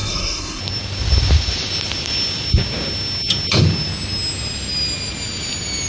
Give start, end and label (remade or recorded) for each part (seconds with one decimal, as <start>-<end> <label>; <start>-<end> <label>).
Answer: 0.0-0.6 remade; 0.6-5.9 recorded